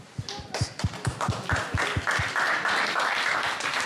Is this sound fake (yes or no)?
no